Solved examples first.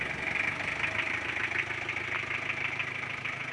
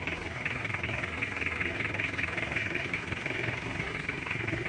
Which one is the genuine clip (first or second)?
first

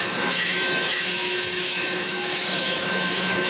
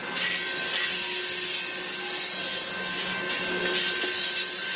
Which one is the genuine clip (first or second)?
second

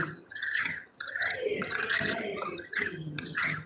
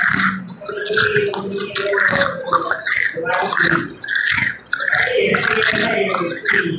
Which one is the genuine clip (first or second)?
second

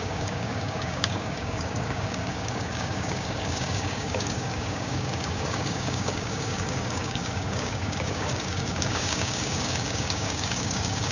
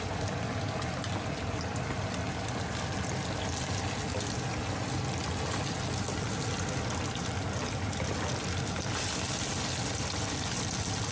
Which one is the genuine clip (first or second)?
second